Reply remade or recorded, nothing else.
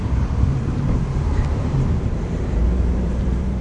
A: remade